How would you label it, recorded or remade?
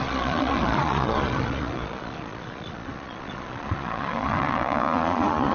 remade